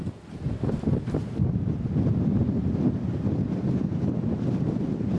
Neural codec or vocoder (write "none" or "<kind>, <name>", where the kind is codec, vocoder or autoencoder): none